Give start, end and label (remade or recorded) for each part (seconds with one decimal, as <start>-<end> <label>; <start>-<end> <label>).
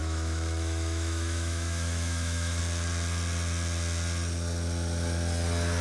0.0-2.6 remade; 2.6-5.8 recorded